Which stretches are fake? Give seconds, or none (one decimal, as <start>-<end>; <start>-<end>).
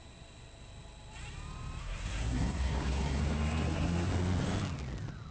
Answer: 1.8-4.1